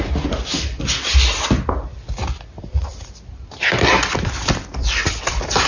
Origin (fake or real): real